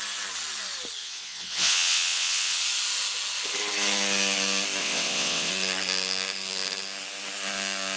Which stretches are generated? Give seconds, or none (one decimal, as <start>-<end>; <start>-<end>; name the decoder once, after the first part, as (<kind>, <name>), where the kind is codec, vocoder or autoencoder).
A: 1.0-2.6 (vocoder, WaveNeXt); 4.8-5.5